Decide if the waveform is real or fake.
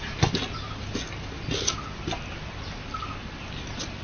real